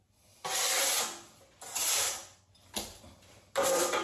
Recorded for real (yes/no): yes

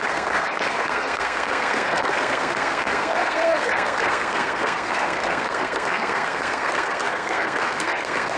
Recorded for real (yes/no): no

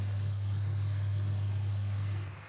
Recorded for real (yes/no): no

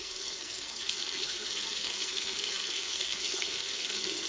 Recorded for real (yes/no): no